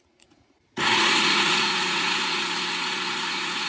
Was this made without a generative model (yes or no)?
no